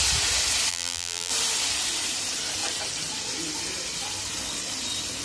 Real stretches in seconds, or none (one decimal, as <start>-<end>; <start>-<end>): 0.0-0.7; 1.3-5.2